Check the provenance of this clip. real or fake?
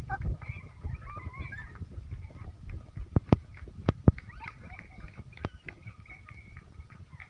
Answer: real